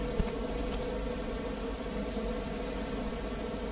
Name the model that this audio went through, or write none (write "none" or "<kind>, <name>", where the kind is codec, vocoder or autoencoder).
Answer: none